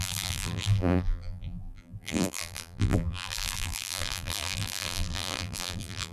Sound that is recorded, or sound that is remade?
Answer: remade